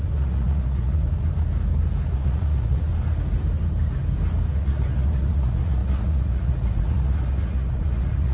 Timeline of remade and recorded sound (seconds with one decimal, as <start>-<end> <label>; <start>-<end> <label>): 0.0-1.0 remade; 1.0-2.1 recorded; 2.1-2.9 remade; 2.9-4.5 recorded; 4.5-8.3 remade